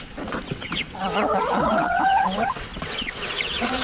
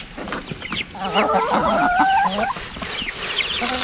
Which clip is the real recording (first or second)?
second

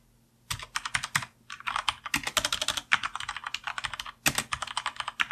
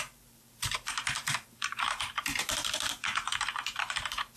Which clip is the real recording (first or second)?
first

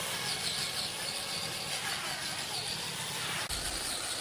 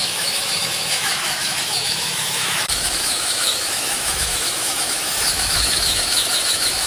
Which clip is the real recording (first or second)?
first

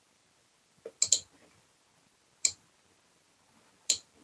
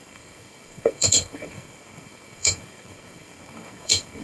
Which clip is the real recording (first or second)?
first